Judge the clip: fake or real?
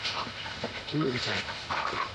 fake